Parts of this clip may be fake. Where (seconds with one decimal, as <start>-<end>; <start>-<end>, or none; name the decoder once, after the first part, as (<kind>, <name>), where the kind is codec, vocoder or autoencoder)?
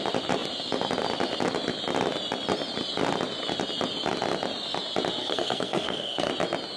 5.2-6.3 (codec, SNAC)